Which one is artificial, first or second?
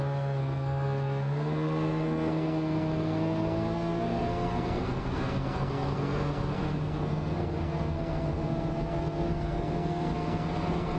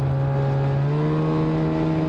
first